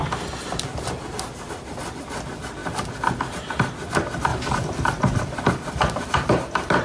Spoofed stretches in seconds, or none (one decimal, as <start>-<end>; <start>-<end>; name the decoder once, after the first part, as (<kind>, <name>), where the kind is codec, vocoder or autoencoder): 4.3-6.3 (vocoder, BigVGAN v2)